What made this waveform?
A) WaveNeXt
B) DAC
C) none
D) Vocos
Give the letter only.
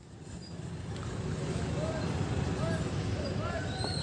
C